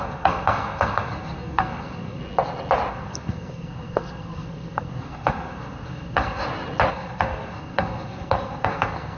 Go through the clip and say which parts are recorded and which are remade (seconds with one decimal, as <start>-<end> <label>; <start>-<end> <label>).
0.0-2.2 remade; 2.2-2.9 recorded; 2.9-6.4 remade; 6.4-6.9 recorded; 6.9-9.2 remade